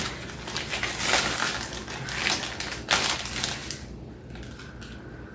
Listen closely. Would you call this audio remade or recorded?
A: recorded